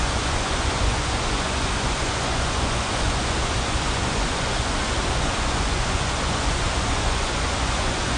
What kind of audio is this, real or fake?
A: fake